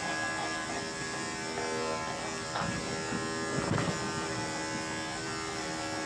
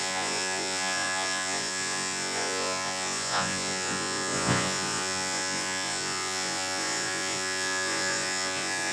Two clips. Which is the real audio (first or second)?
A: first